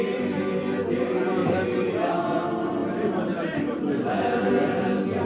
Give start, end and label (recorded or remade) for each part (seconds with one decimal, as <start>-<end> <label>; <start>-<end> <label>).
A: 0.0-2.8 recorded; 2.8-4.5 remade; 4.5-5.3 recorded